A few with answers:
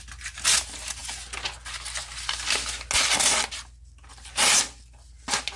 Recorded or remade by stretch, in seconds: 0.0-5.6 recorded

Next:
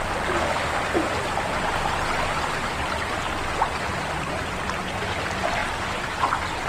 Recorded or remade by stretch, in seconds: 0.0-6.7 recorded

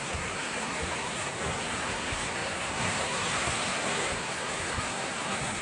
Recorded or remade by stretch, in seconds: 0.0-5.6 remade

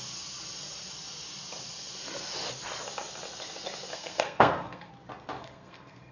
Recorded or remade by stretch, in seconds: 0.0-3.9 recorded; 3.9-4.9 remade; 4.9-5.4 recorded; 5.4-6.1 remade

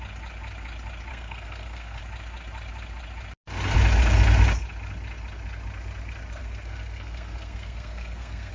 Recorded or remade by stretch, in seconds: 0.0-1.1 recorded; 1.1-2.0 remade; 2.0-6.4 recorded; 6.4-8.5 remade

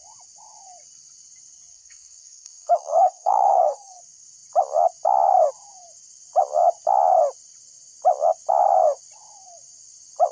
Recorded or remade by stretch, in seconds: 0.0-1.7 recorded; 1.7-4.0 remade; 4.0-10.3 recorded

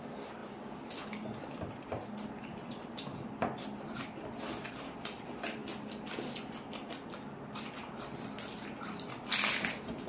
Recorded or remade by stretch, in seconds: 0.0-10.1 recorded

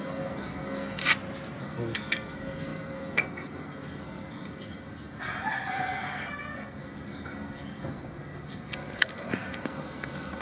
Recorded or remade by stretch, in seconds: 0.0-1.0 remade; 1.0-1.6 recorded; 1.6-10.4 remade